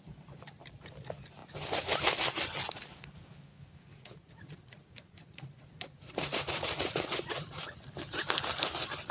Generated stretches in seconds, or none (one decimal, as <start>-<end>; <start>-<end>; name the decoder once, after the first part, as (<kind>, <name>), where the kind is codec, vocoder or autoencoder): 3.9-7.8 (vocoder, Vocos)